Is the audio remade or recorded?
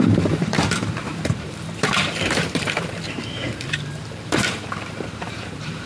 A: remade